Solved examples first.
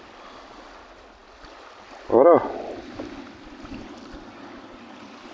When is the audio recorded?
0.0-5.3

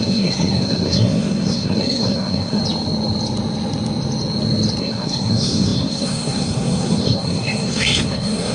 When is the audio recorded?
2.6-4.8

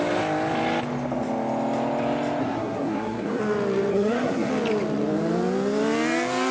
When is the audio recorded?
0.0-2.4; 3.4-3.9; 4.5-6.5

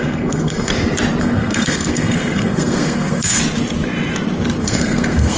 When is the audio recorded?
0.7-1.2; 3.4-4.6

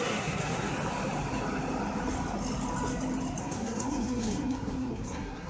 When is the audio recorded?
0.7-3.4

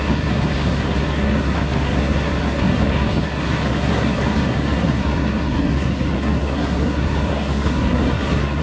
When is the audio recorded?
none

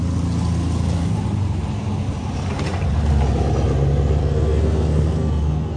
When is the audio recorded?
0.0-4.2

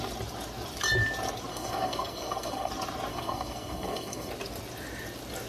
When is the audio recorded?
0.0-1.5; 2.7-3.1; 4.3-5.5